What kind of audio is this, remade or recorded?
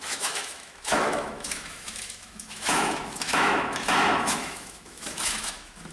remade